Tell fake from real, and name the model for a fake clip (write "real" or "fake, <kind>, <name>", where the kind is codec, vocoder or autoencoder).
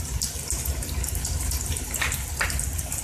real